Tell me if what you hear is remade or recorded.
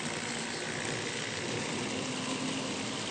recorded